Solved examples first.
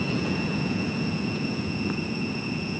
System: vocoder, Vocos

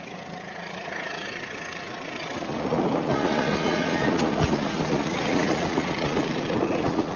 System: vocoder, Vocos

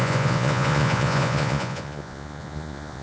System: vocoder, Vocos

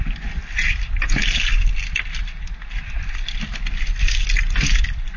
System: none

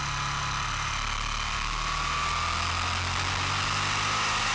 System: none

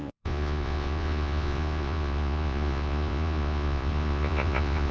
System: vocoder, Vocos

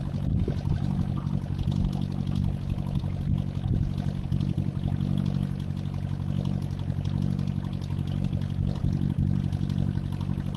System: none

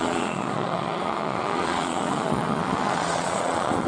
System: vocoder, Vocos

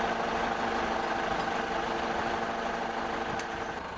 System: none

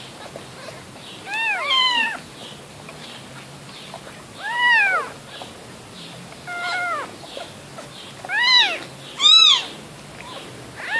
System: none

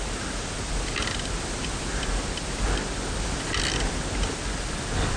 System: none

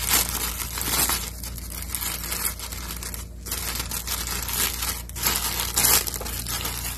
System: none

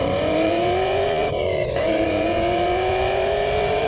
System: vocoder, Vocos